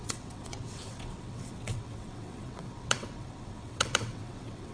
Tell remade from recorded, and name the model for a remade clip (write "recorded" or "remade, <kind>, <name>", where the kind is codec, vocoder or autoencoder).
remade, vocoder, WaveNeXt